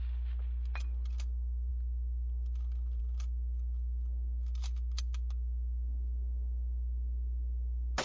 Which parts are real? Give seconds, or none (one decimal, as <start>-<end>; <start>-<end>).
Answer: 0.0-8.0